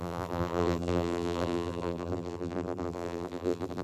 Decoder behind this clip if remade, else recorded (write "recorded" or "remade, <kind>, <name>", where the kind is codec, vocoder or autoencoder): remade, vocoder, BigVGAN v2